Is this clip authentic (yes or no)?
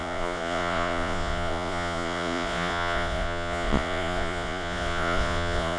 no